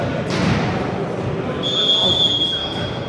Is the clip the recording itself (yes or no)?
yes